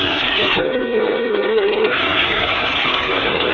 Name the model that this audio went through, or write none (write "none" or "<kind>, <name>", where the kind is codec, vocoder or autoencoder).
codec, SNAC